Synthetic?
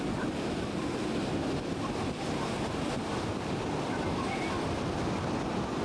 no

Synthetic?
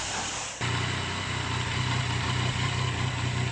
no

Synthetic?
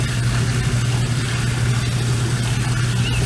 no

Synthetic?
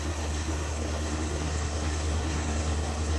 yes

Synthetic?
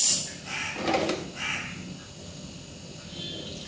no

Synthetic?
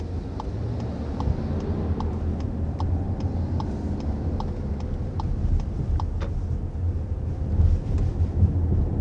no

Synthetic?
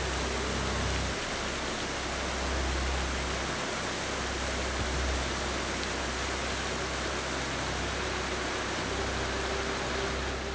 no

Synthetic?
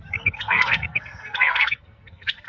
yes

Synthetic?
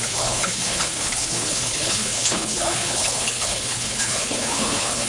yes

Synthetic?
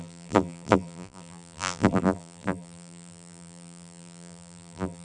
yes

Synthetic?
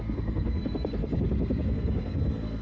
yes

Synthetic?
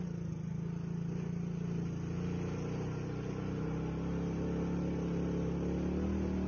no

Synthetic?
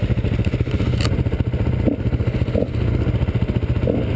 no